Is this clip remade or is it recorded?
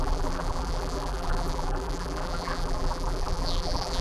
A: remade